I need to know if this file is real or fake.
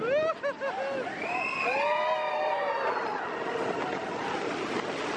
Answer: real